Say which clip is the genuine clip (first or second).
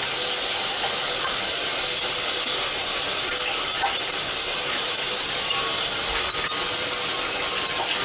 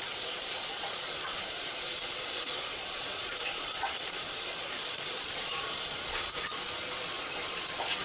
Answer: first